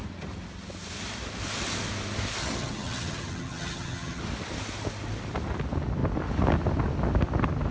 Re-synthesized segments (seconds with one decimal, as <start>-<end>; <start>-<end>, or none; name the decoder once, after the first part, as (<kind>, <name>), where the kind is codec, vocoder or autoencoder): 2.4-4.2 (vocoder, HiFi-GAN)